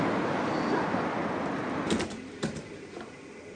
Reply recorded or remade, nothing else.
recorded